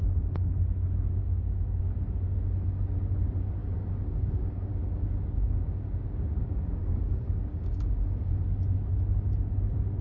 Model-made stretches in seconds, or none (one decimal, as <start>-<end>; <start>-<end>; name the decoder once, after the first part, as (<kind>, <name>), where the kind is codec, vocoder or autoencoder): 1.2-1.8 (codec, DAC); 3.6-8.3